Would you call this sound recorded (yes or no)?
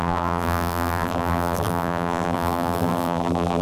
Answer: no